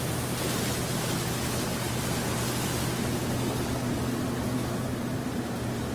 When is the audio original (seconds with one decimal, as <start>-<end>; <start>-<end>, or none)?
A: 0.0-5.9